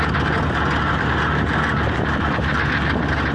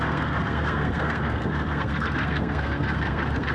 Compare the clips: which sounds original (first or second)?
first